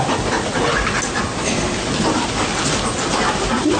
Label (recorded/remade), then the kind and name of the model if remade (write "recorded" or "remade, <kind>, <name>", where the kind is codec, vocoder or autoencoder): recorded